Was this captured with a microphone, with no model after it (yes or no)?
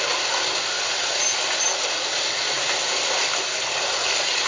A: yes